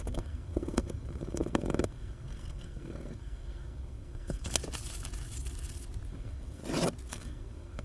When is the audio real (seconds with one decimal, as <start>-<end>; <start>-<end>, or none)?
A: 4.5-6.1; 6.6-7.1